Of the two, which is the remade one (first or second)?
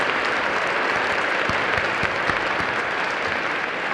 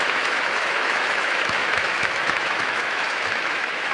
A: second